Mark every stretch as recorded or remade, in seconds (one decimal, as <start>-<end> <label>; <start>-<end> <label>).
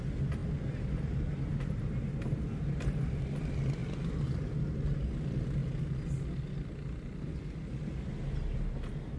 0.0-9.2 recorded